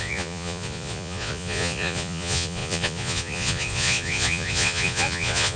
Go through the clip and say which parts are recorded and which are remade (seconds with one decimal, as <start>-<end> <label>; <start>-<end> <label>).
0.0-5.6 remade